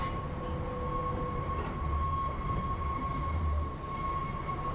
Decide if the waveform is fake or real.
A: real